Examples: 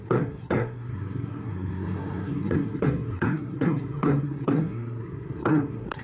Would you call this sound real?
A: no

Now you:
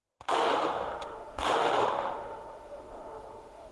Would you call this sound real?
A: no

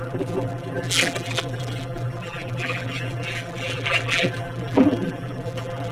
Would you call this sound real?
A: no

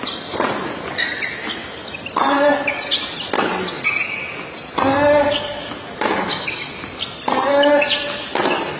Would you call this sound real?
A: yes